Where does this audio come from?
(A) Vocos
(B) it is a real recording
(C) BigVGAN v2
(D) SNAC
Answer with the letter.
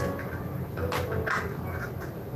B